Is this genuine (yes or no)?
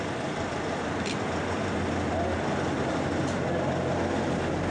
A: yes